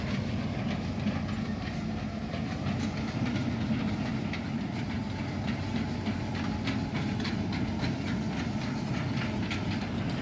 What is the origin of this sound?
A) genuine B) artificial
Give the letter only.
A